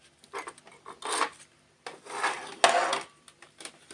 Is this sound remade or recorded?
recorded